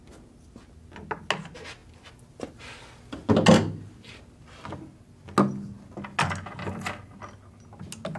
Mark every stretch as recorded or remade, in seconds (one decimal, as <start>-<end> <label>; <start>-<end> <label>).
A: 0.0-8.2 recorded